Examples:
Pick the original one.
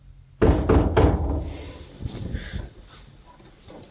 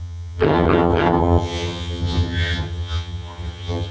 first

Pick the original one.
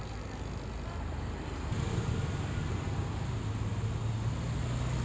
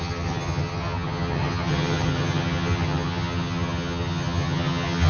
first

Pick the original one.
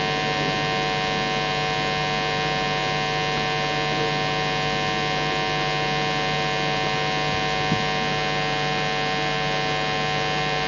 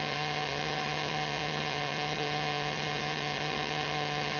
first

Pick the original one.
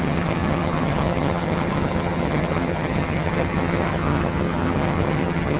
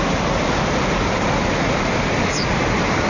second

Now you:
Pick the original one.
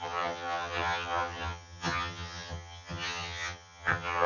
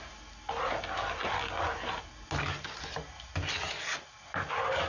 second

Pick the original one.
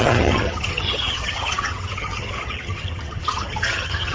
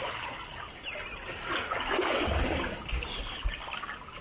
second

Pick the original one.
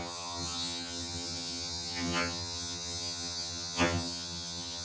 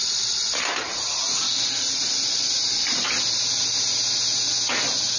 second